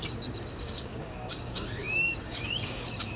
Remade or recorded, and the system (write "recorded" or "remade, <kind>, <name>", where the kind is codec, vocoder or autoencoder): remade, codec, DAC